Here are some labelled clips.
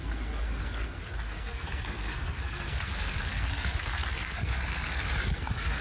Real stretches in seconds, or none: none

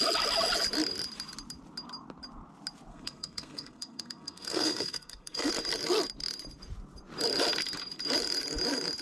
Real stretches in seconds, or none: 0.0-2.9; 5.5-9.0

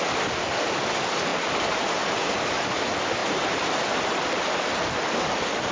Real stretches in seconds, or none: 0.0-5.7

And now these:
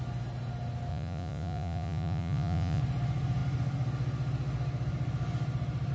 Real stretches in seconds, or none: 0.0-0.9; 2.8-5.9

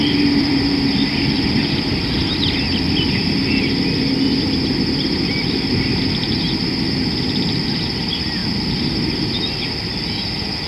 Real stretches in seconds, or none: 2.2-7.2; 8.4-10.7

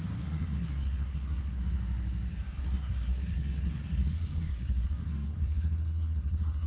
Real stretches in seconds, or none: 1.6-2.6

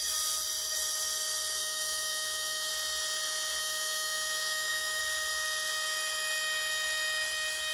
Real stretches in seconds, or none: 0.0-1.6; 2.7-3.6; 5.0-7.7

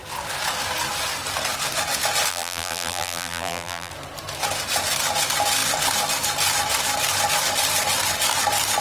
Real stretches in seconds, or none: 0.0-2.3; 3.9-8.8